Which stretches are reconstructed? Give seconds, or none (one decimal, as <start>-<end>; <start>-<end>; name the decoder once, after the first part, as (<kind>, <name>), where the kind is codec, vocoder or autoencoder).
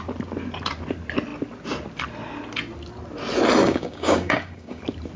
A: 3.6-4.8 (codec, DAC)